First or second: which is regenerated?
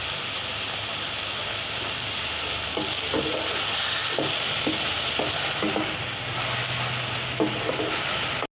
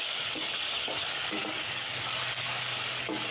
second